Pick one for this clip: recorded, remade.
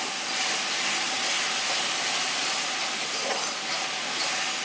recorded